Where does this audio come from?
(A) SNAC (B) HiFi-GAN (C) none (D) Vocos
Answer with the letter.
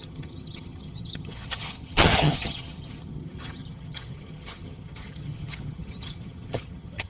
B